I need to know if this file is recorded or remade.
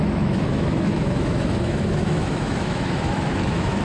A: remade